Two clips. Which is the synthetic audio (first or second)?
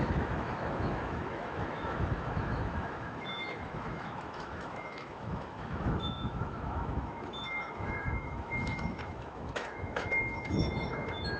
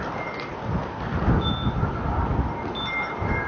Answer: first